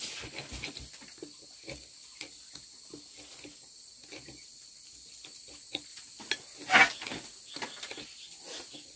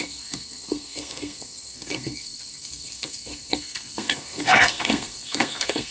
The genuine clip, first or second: first